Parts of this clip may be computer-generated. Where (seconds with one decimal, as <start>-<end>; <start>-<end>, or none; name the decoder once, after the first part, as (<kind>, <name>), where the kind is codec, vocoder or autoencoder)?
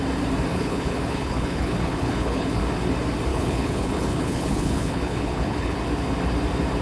0.5-2.6 (codec, HILCodec); 3.3-5.8